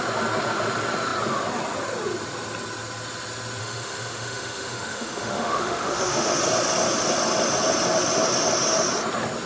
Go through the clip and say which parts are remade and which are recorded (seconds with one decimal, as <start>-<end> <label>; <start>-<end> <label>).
0.0-3.6 recorded; 3.6-6.4 remade; 6.4-9.5 recorded